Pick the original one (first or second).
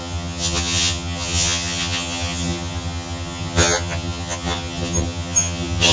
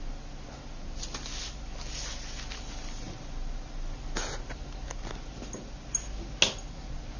second